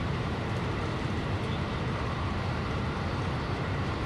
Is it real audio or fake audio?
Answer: fake